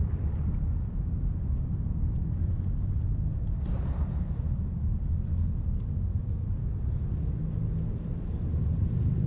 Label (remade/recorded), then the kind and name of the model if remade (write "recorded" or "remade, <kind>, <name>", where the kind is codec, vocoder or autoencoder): recorded